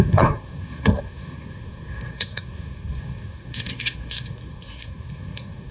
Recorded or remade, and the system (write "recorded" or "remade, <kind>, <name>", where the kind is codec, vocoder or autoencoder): remade, codec, SNAC